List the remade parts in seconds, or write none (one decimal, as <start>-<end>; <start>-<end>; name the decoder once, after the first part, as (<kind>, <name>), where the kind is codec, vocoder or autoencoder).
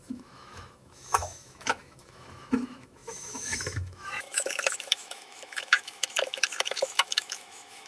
0.0-7.9 (autoencoder, DAC-VAE)